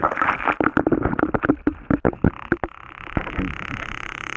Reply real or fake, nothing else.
real